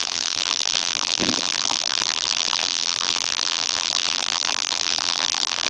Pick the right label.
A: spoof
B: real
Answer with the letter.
A